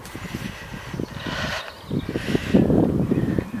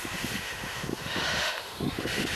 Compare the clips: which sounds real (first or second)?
first